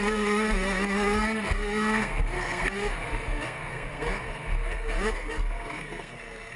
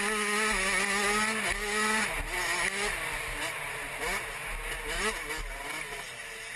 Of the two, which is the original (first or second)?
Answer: second